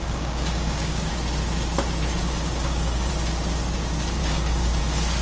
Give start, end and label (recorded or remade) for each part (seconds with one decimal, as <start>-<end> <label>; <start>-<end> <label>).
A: 0.0-1.1 remade; 1.1-2.2 recorded; 2.2-3.1 remade; 3.1-4.2 recorded; 4.2-4.8 remade; 4.8-5.2 recorded